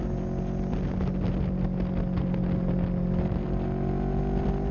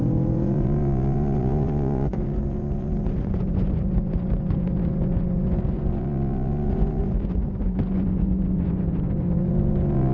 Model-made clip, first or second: second